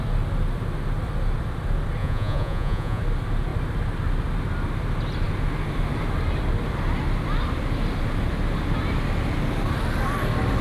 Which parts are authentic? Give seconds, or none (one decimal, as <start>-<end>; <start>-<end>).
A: 0.0-2.0; 3.0-10.6